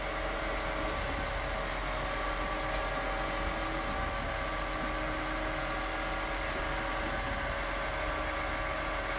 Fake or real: real